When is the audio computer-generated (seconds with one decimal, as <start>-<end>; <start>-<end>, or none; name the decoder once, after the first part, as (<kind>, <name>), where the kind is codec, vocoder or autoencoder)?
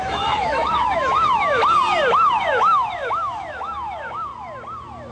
0.0-1.6 (autoencoder, DAC-VAE); 2.3-4.3